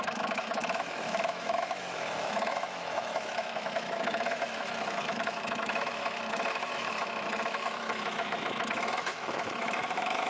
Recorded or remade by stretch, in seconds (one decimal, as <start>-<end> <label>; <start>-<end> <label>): 0.0-10.3 remade